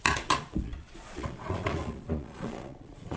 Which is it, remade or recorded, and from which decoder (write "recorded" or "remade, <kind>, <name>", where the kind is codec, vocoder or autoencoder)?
remade, vocoder, Vocos